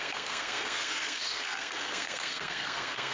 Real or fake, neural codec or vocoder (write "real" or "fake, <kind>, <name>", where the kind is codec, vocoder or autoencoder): fake, codec, SNAC